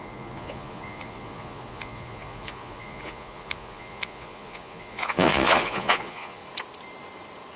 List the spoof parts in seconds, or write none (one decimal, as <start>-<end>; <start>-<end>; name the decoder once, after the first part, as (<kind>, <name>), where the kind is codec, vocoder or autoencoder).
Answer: 0.0-6.4 (vocoder, Vocos)